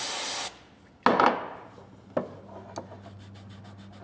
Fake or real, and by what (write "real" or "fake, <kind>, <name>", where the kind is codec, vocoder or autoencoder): real